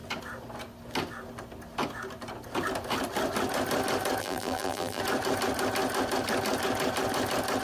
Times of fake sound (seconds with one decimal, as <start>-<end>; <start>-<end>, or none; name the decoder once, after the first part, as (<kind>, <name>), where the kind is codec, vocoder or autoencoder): 4.2-5.0 (vocoder, BigVGAN v2)